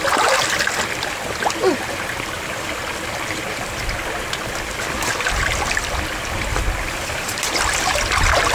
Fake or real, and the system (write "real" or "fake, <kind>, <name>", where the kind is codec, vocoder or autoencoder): real